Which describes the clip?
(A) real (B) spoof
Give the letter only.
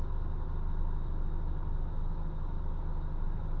A